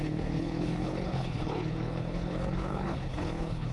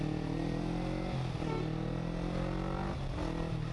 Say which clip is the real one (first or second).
second